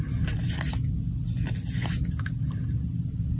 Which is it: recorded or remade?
recorded